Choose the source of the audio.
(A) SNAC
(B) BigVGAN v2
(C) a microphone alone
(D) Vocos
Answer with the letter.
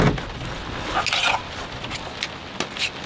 C